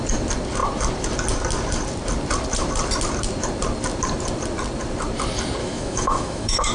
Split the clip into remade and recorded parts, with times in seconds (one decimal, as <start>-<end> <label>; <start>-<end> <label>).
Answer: 0.0-5.6 recorded; 5.6-6.7 remade